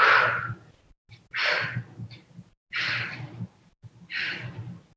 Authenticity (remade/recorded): recorded